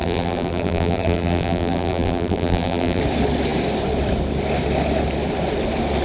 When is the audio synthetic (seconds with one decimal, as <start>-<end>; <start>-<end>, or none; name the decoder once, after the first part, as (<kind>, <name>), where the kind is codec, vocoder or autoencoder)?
0.0-3.0 (vocoder, BigVGAN v2)